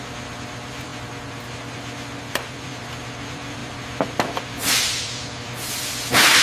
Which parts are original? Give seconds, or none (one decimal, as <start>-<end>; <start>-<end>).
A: 0.9-1.4